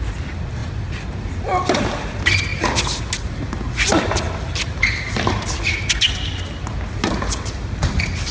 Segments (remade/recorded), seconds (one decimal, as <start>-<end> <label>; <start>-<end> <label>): 0.0-8.3 recorded